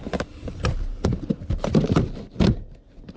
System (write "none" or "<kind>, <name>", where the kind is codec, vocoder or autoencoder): none